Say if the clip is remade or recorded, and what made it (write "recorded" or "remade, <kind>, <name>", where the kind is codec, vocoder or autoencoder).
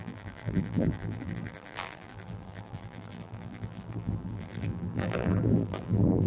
remade, vocoder, BigVGAN v2